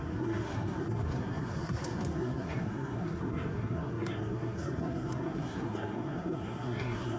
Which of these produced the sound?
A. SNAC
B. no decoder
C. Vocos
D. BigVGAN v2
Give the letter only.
A